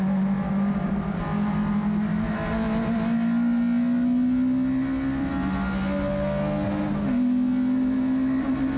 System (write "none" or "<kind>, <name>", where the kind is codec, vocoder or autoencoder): none